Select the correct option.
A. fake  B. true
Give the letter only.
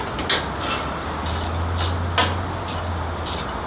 B